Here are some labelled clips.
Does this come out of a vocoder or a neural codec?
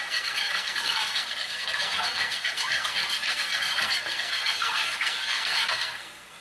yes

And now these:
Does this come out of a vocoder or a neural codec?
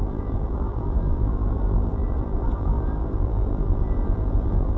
yes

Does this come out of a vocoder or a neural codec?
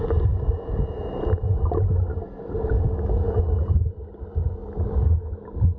no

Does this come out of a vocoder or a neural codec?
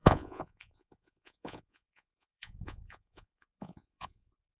yes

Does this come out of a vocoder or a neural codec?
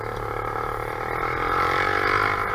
no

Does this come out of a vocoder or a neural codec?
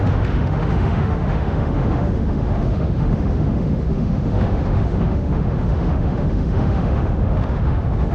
yes